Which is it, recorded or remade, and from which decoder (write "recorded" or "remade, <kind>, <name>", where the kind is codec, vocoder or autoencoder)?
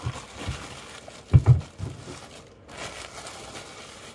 recorded